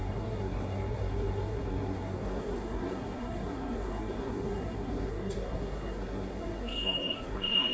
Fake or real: fake